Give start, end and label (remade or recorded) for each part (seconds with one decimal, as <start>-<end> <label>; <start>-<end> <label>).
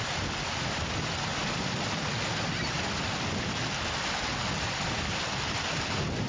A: 0.0-6.3 recorded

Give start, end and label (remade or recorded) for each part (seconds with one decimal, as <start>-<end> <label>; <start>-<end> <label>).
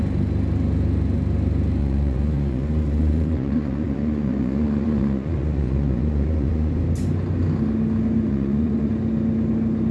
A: 0.0-1.8 recorded; 1.8-6.7 remade; 6.7-8.3 recorded; 8.3-8.9 remade; 8.9-9.9 recorded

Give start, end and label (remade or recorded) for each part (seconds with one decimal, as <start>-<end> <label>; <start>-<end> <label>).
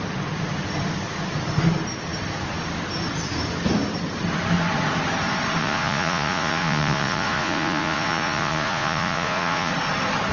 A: 0.0-5.6 recorded; 5.6-9.7 remade; 9.7-10.3 recorded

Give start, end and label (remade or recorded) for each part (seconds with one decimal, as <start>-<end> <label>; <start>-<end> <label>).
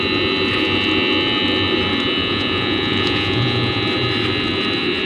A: 0.0-2.2 recorded; 2.2-3.8 remade; 3.8-5.1 recorded